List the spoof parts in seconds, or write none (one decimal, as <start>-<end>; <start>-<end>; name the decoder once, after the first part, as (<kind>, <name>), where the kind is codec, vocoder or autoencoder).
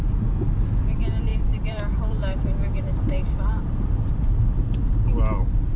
1.3-4.8 (vocoder, BigVGAN v2)